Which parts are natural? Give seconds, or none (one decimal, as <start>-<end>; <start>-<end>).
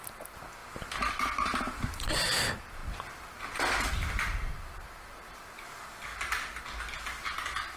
0.0-7.8